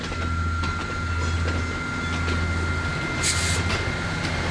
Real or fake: real